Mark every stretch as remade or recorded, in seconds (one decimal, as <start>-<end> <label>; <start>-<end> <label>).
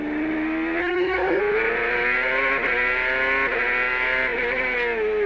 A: 0.0-0.8 recorded; 0.8-1.4 remade; 1.4-5.3 recorded